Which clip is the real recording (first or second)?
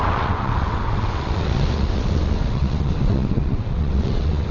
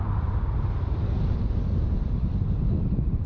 second